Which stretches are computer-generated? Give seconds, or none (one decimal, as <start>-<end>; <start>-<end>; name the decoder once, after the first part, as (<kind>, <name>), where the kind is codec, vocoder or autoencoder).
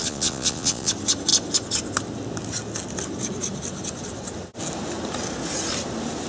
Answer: 0.0-0.9 (vocoder, Vocos)